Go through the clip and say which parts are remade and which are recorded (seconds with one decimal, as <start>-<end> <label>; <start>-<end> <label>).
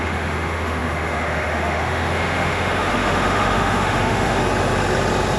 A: 0.0-4.4 remade; 4.4-5.4 recorded